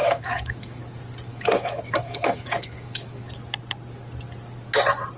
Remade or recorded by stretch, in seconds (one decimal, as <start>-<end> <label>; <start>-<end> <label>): 0.0-0.8 remade; 0.8-1.3 recorded; 1.3-3.2 remade; 3.2-5.2 recorded